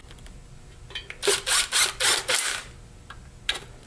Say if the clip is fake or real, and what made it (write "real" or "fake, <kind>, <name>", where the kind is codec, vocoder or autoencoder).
real